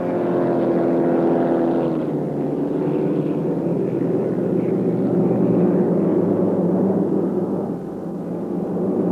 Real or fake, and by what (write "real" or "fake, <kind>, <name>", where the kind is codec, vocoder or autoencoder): real